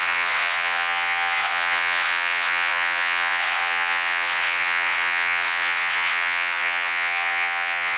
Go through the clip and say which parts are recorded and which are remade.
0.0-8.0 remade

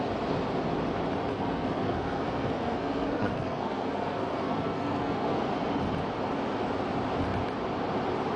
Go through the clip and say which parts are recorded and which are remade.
0.0-1.3 recorded; 1.3-5.5 remade; 5.5-8.4 recorded

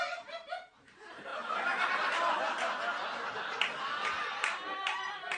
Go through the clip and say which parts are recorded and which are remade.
0.0-1.3 remade; 1.3-4.3 recorded; 4.3-5.4 remade

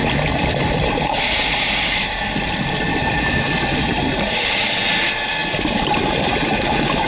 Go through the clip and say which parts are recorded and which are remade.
0.0-7.1 recorded

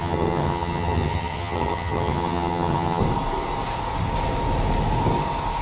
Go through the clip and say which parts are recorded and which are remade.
0.0-3.0 remade; 3.0-5.6 recorded